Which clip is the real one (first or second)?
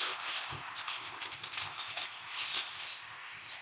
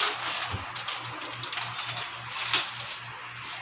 second